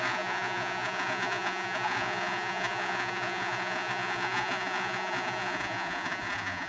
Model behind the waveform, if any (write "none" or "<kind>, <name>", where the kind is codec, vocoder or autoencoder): vocoder, Vocos